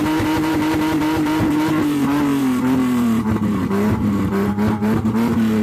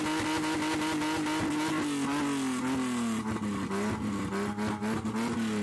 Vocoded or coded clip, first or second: first